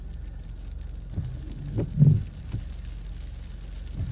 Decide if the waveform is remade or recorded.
recorded